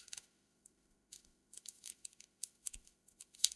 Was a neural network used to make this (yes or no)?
yes